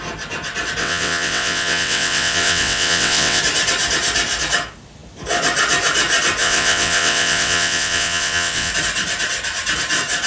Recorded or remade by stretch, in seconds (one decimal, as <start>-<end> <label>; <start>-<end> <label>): 0.0-0.8 recorded; 0.8-3.4 remade; 3.4-6.4 recorded; 6.4-8.7 remade; 8.7-10.3 recorded